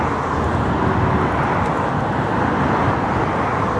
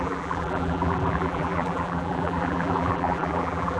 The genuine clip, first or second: first